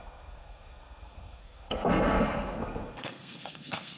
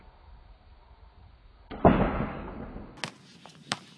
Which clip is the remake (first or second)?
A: first